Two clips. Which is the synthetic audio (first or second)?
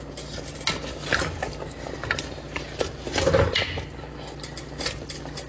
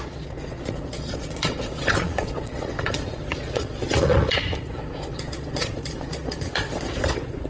second